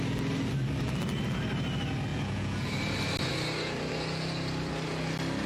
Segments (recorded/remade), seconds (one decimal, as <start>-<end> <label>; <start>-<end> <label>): 0.0-2.1 recorded; 2.1-2.7 remade; 2.7-5.5 recorded